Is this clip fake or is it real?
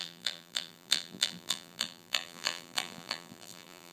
fake